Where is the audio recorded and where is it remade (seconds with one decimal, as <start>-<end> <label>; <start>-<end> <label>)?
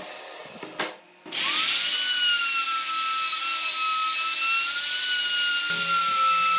0.0-6.6 recorded